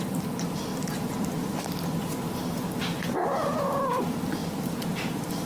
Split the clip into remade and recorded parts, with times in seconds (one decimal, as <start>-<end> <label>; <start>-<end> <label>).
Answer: 0.0-5.5 recorded